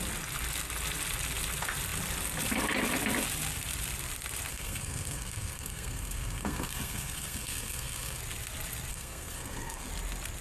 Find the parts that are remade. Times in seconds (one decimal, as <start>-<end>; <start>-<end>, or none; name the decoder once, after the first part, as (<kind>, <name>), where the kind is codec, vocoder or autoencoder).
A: 4.5-8.2 (codec, SNAC); 8.9-9.9